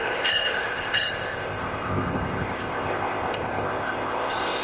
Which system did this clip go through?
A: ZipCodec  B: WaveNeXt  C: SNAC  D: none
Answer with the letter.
A